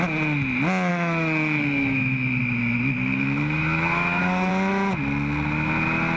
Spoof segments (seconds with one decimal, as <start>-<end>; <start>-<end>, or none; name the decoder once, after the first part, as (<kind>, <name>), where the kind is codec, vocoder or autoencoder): 0.9-2.4 (autoencoder, DAC-VAE); 3.1-4.5